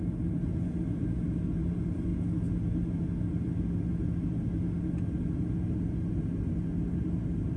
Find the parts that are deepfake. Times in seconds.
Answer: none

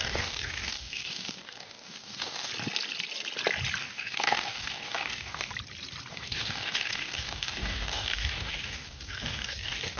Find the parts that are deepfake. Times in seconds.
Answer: 0.0-2.5 (codec, DAC); 3.8-5.5; 6.1-10.0

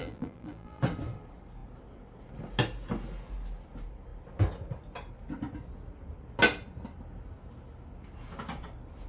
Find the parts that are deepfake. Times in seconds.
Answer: 0.0-0.8 (vocoder, BigVGAN v2)

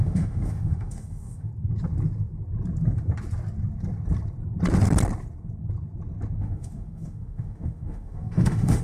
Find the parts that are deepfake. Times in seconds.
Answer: 0.0-1.5 (autoencoder, DAC-VAE); 6.4-8.8